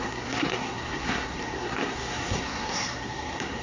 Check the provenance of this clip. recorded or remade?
remade